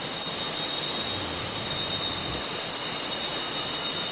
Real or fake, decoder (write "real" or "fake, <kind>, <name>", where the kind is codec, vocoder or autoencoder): real